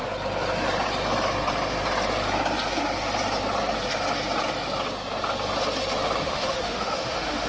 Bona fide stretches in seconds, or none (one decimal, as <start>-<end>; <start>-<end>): 0.0-6.2